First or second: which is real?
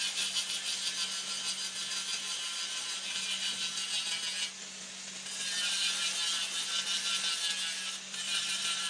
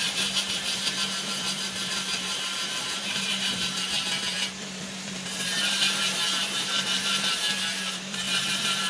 first